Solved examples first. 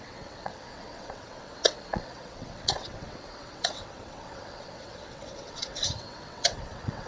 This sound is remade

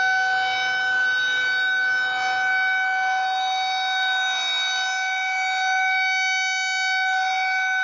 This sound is recorded